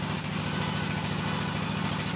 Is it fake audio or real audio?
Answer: real